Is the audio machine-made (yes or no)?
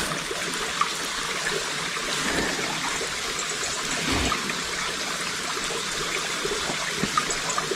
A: no